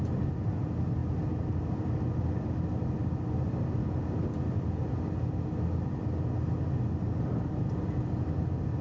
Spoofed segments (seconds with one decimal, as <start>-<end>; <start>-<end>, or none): none